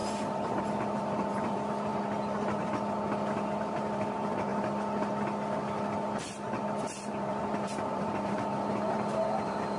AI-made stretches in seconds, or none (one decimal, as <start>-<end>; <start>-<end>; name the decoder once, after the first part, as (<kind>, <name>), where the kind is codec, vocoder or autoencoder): 0.0-1.9 (vocoder, BigVGAN v2); 3.6-4.5; 6.8-9.8